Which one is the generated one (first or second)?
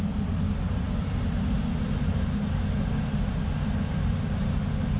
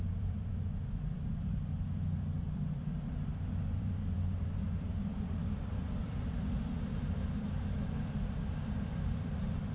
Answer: second